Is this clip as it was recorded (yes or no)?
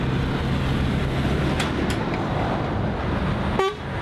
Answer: yes